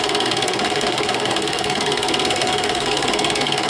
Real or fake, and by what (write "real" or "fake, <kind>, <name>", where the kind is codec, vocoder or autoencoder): fake, codec, SNAC